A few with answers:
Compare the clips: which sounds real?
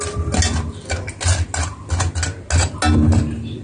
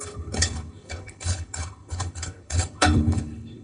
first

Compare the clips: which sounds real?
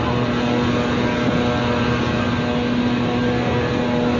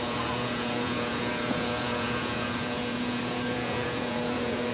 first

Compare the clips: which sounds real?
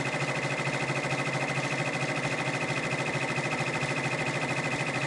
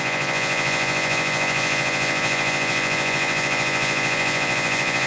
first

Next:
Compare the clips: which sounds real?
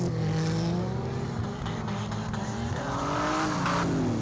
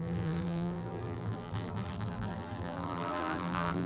first